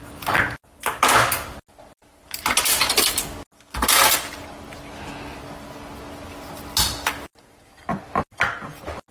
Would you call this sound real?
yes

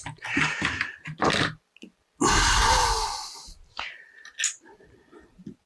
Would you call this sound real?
yes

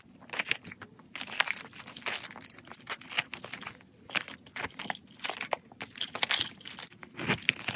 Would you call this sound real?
yes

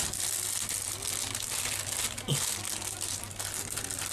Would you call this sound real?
yes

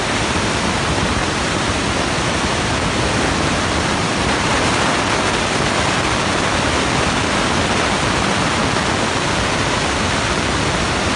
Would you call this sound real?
yes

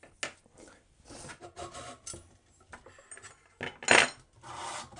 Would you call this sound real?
yes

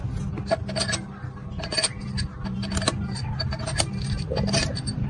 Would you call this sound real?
yes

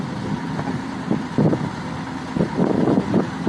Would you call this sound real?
yes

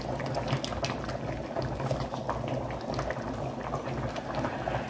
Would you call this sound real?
yes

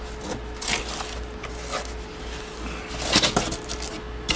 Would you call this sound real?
yes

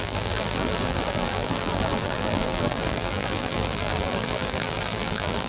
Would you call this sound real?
no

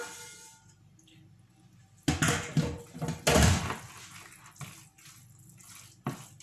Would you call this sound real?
yes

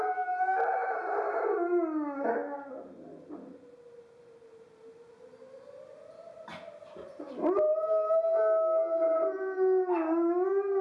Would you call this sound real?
yes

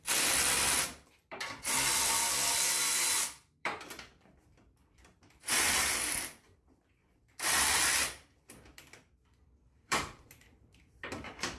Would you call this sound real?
no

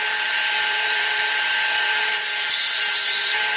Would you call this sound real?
no